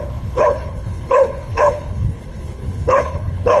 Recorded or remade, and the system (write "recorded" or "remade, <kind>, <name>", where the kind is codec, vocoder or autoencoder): remade, codec, HILCodec